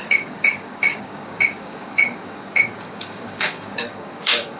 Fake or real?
fake